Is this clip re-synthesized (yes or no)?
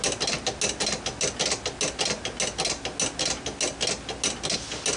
no